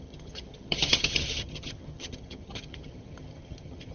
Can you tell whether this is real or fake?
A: fake